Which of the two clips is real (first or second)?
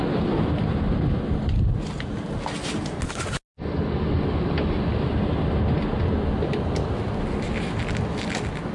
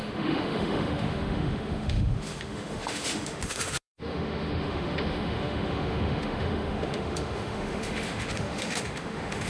first